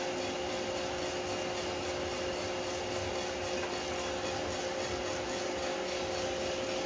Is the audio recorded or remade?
recorded